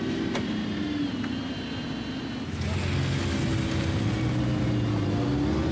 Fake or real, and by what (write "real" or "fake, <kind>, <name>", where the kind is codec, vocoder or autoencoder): real